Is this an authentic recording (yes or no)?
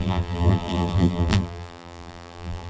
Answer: no